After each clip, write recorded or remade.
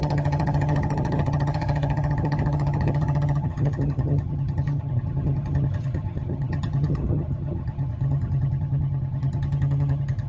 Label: remade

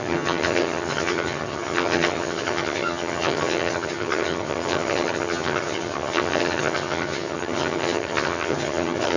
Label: remade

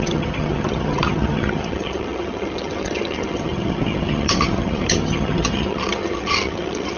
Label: remade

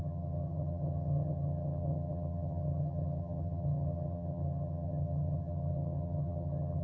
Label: remade